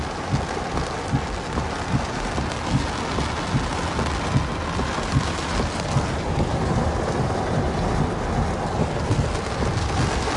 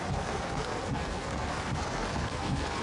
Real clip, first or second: first